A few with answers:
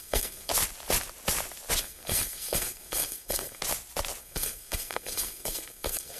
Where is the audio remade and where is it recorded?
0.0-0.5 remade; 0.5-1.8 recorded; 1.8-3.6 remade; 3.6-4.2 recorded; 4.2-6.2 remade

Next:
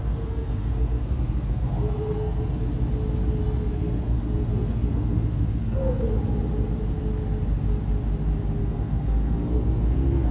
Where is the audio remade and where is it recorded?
0.0-2.7 remade; 2.7-3.4 recorded; 3.4-5.8 remade; 5.8-8.6 recorded; 8.6-10.3 remade

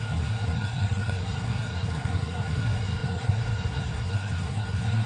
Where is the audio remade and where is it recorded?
0.0-5.1 remade